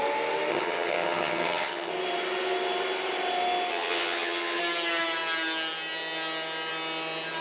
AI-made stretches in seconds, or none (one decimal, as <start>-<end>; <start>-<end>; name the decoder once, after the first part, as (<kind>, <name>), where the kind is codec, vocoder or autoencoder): 0.5-1.9 (vocoder, HiFi-GAN); 3.7-4.6